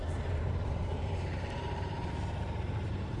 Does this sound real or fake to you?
fake